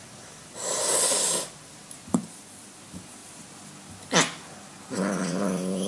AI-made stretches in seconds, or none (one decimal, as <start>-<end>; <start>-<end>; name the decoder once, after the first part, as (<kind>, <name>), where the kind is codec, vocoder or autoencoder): none